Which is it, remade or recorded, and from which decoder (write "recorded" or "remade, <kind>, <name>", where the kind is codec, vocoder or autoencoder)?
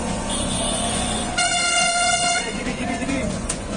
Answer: remade, vocoder, Vocos